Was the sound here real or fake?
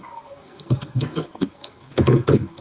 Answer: fake